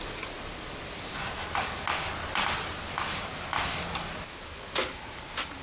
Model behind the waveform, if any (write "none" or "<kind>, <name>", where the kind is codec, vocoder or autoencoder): none